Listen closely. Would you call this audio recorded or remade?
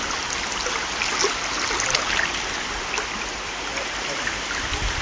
recorded